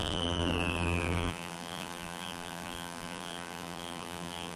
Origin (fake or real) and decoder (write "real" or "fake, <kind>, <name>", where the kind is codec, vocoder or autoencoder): fake, vocoder, BigVGAN v2